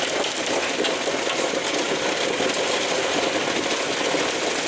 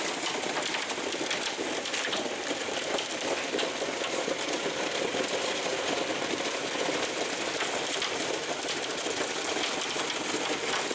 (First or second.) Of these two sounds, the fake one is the second